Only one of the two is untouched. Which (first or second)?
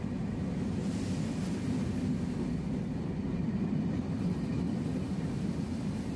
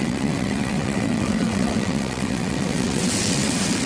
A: first